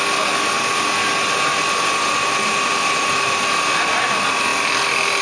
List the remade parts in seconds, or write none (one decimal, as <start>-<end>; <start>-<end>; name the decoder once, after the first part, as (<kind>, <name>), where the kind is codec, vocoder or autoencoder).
none